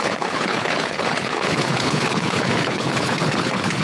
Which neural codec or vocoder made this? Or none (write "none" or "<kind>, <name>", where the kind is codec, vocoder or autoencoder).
codec, HILCodec